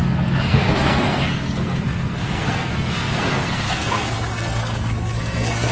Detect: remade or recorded remade